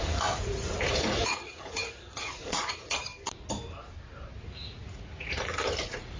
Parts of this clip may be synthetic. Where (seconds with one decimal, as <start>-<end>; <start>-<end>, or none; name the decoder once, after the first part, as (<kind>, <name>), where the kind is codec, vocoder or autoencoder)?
0.0-3.1 (vocoder, Vocos); 4.3-6.2